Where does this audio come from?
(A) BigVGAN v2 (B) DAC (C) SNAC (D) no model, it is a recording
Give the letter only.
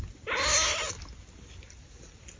D